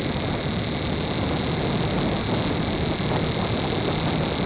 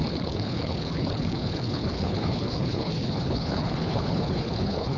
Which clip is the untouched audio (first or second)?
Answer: first